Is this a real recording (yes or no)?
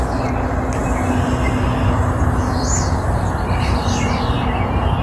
yes